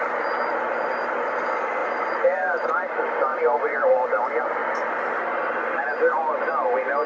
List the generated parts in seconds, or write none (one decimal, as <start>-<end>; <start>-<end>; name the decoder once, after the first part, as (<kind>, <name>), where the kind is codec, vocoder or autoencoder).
1.8-2.7 (vocoder, BigVGAN v2); 3.3-3.9; 4.6-6.5